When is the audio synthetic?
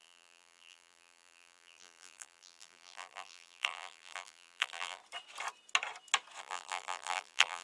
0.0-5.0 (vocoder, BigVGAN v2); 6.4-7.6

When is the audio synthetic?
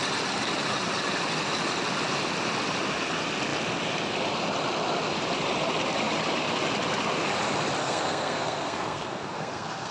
7.8-9.9 (codec, SNAC)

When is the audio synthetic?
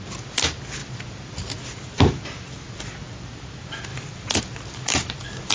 none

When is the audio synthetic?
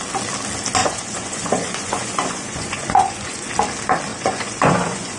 0.8-3.5 (vocoder, Vocos); 4.1-5.2